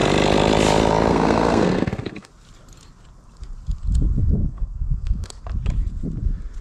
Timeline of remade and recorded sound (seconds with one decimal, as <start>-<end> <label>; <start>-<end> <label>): 0.0-1.1 recorded; 1.1-2.3 remade; 2.3-4.4 recorded; 4.4-5.3 remade; 5.3-6.6 recorded